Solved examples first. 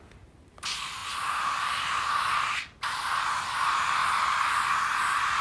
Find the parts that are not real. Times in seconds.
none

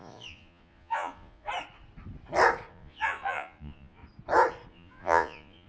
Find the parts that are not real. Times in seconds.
0.0-1.5 (vocoder, Vocos); 2.7-4.0; 4.7-5.7